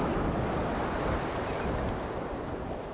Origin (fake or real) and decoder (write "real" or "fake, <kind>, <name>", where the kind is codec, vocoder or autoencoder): real